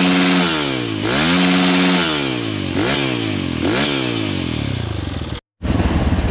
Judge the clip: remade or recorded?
recorded